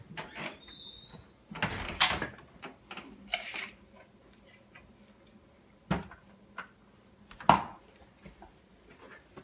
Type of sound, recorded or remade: recorded